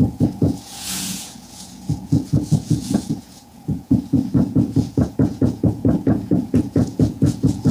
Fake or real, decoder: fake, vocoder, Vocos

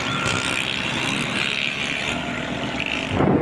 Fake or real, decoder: real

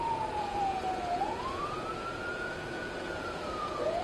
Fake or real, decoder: fake, vocoder, Vocos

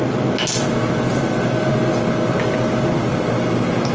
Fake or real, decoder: real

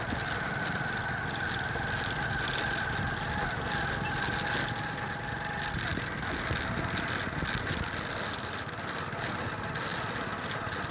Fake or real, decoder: real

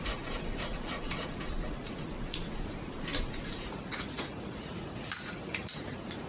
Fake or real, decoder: fake, vocoder, Vocos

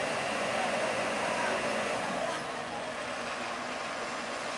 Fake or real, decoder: fake, vocoder, Vocos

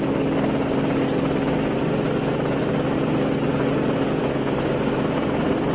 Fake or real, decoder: real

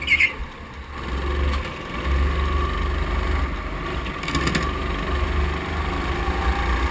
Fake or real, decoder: real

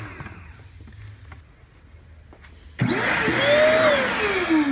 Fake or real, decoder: real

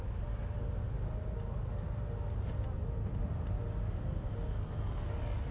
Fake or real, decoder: real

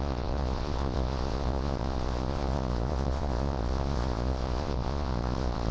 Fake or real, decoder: fake, vocoder, Vocos